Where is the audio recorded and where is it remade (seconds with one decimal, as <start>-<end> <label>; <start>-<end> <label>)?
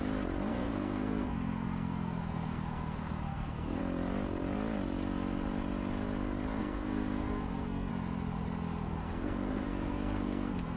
0.0-0.5 recorded; 0.5-3.8 remade; 3.8-6.6 recorded; 6.6-7.9 remade; 7.9-8.8 recorded; 8.8-10.8 remade